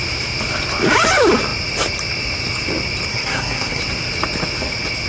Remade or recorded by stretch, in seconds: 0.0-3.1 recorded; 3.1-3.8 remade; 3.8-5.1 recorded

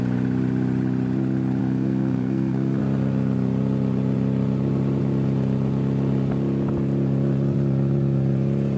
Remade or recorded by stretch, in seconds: 0.0-1.6 recorded; 1.6-2.8 remade; 2.8-8.8 recorded

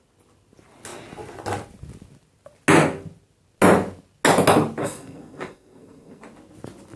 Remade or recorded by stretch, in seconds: 0.0-4.8 recorded; 4.8-6.2 remade; 6.2-7.0 recorded

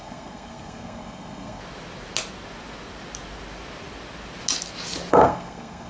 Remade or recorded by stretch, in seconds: 0.0-1.6 remade; 1.6-5.1 recorded; 5.1-5.9 remade

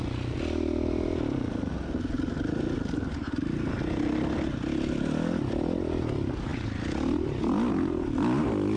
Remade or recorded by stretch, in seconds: 0.0-8.8 recorded

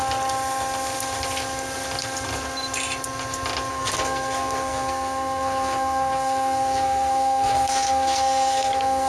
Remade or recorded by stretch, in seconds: 0.0-3.7 recorded; 3.7-9.1 remade

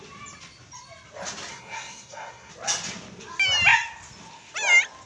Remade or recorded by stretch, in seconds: 0.0-1.5 recorded; 1.5-2.5 remade; 2.5-5.1 recorded